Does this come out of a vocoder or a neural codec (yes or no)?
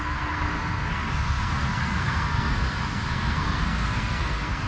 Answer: yes